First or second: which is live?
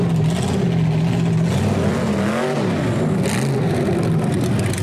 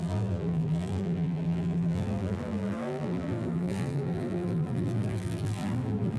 first